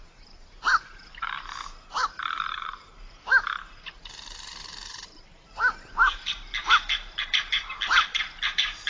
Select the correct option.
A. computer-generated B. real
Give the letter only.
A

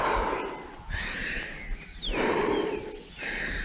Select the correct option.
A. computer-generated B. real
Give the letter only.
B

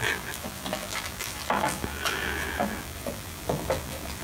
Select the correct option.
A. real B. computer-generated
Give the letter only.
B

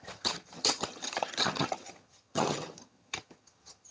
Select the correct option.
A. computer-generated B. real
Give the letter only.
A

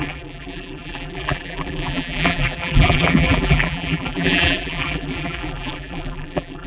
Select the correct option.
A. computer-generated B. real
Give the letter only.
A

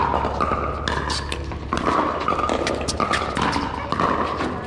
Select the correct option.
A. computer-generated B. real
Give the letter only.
B